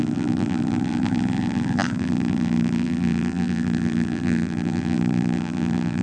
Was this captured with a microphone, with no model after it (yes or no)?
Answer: no